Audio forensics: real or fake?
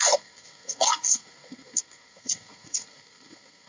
fake